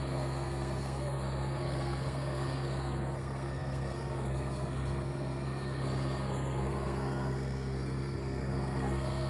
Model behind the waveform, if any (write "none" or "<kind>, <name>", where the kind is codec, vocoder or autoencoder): codec, SNAC